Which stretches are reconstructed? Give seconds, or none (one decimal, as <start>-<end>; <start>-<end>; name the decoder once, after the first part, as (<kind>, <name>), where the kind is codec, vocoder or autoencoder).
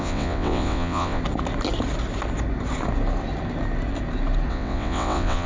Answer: 0.0-1.2 (vocoder, WaveNeXt); 4.5-5.5